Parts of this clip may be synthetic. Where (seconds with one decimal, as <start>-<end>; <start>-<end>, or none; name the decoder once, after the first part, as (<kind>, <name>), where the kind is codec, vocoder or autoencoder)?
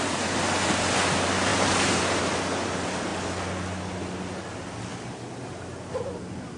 1.5-2.2 (vocoder, BigVGAN v2)